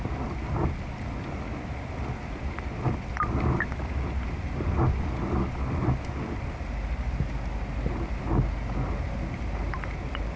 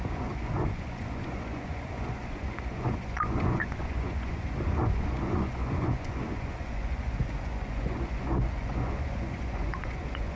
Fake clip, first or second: second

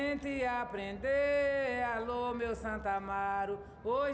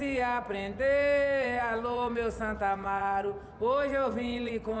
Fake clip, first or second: second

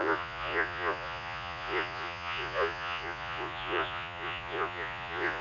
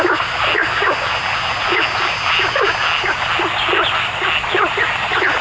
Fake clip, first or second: first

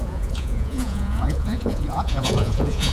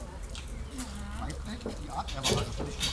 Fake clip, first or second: first